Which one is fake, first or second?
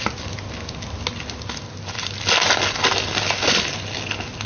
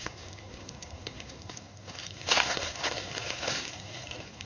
second